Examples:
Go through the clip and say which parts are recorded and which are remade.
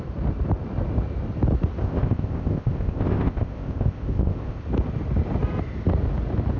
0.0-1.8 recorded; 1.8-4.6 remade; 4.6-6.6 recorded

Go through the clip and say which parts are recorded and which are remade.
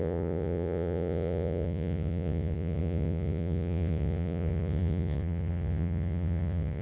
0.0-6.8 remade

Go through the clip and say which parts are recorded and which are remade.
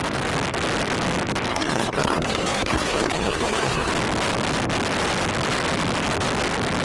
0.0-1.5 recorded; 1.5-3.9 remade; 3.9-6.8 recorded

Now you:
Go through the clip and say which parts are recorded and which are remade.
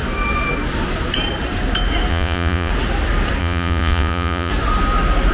0.0-2.1 recorded; 2.1-2.7 remade; 2.7-3.4 recorded; 3.4-4.5 remade; 4.5-5.3 recorded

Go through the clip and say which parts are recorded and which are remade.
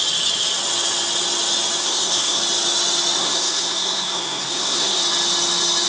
0.0-1.8 recorded; 1.8-2.4 remade; 2.4-3.2 recorded; 3.2-5.0 remade; 5.0-5.9 recorded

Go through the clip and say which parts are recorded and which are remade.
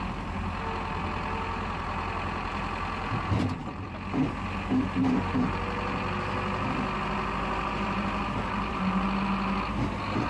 0.0-10.3 recorded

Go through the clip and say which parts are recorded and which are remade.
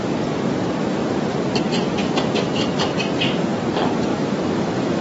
0.0-4.1 recorded; 4.1-5.0 remade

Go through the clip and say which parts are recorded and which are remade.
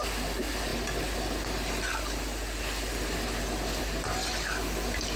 0.0-5.2 recorded